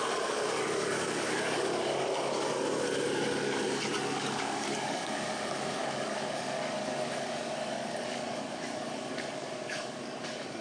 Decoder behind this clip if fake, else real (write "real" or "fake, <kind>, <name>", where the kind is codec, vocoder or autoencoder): fake, codec, DAC